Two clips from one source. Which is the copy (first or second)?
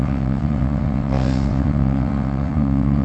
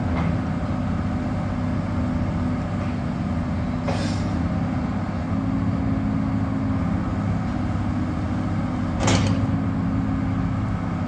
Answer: first